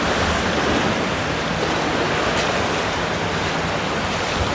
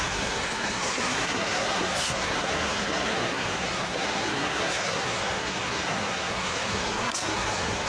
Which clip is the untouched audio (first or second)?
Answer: first